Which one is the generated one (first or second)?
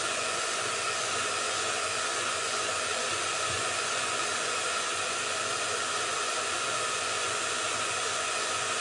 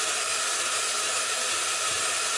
first